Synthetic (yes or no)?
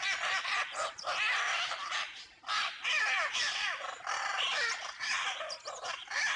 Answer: no